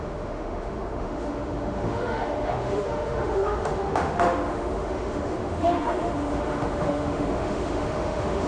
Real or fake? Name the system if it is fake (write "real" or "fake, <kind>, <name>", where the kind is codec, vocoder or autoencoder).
fake, autoencoder, DAC-VAE